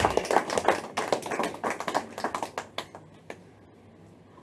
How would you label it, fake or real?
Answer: real